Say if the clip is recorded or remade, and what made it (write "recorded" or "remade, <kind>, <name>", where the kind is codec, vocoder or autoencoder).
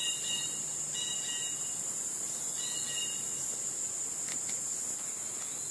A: recorded